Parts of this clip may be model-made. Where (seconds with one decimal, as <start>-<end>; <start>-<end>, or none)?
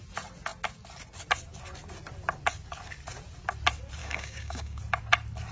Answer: 4.0-4.8